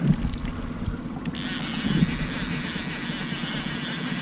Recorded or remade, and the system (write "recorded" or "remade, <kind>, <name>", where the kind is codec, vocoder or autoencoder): recorded